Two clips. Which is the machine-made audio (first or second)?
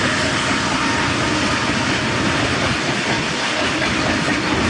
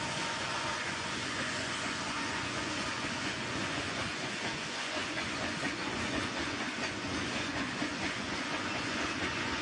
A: second